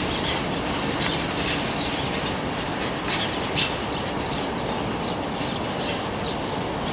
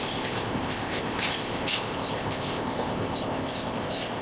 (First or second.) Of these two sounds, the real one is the first